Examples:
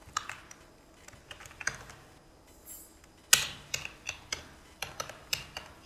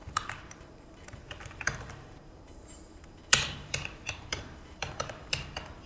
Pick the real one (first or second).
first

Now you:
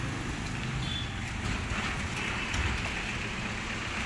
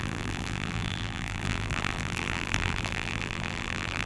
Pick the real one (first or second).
first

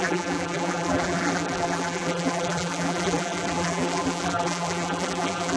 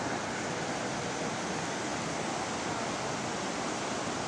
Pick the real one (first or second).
second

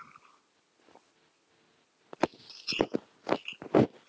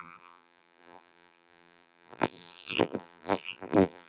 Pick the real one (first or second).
first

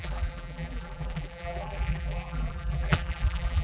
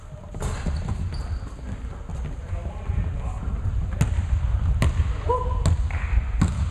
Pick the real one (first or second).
second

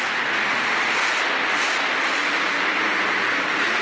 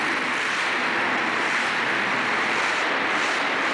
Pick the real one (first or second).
first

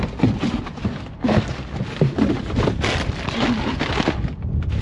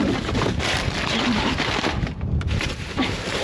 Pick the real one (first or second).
first